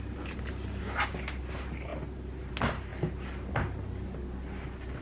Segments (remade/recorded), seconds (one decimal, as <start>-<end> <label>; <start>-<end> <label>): 0.0-5.0 recorded